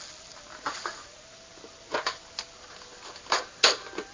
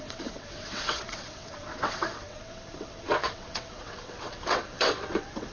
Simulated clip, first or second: second